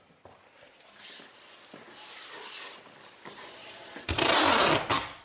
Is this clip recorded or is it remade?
recorded